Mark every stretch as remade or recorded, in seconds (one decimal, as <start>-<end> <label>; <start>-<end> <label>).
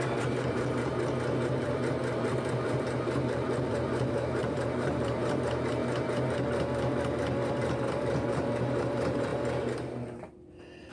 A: 0.0-0.9 remade; 0.9-1.6 recorded; 1.6-5.8 remade; 5.8-7.5 recorded; 7.5-9.3 remade; 9.3-10.9 recorded